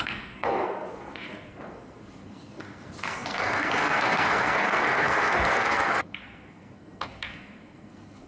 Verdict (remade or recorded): remade